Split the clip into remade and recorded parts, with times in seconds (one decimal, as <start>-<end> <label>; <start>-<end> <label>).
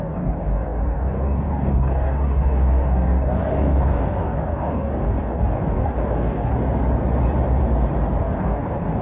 0.0-6.5 remade; 6.5-8.2 recorded; 8.2-9.0 remade